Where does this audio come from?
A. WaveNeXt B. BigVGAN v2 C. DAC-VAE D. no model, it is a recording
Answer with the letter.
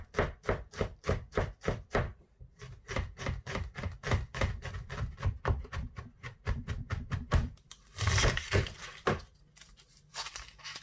B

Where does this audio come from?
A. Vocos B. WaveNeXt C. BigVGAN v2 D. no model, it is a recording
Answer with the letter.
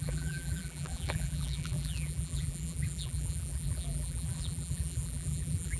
C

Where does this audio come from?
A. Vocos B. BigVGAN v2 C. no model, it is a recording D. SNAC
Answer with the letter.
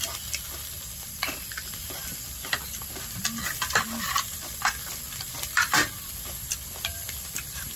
B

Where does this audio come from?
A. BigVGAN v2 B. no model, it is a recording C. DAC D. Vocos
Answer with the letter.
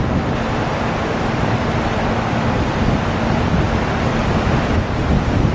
A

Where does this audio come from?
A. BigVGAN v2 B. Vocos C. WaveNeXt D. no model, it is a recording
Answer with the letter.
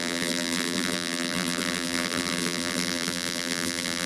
A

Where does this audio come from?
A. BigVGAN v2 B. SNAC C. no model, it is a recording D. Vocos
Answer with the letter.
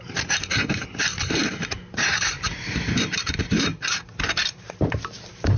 A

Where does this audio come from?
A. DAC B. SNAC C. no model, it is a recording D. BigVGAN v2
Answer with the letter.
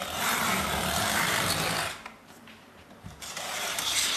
D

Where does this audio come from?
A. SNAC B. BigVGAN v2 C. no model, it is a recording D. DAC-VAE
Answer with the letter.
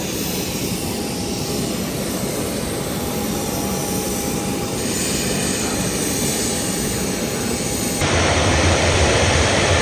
B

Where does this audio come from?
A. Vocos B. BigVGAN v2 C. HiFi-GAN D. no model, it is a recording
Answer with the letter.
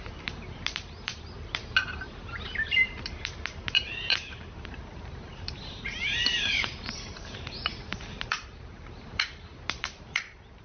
B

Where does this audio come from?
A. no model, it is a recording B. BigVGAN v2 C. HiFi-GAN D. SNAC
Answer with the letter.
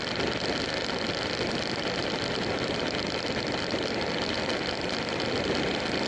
A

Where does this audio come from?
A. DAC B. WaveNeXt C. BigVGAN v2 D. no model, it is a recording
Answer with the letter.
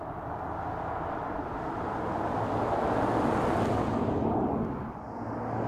D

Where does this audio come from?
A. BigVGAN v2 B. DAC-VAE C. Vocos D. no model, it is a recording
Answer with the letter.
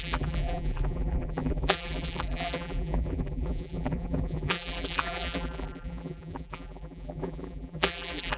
A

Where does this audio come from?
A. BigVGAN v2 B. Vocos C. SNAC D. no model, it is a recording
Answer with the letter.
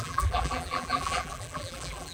A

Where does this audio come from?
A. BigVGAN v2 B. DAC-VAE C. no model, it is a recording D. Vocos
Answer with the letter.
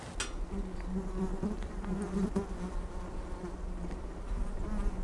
C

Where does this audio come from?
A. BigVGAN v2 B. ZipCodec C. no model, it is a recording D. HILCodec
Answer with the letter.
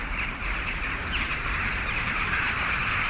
A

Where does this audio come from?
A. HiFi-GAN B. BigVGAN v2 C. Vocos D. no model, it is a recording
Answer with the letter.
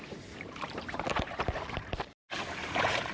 B